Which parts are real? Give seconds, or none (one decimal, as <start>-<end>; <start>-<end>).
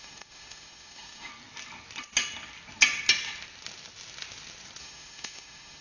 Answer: 1.3-4.8